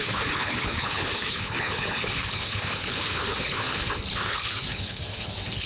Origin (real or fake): fake